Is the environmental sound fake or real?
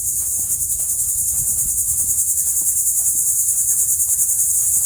real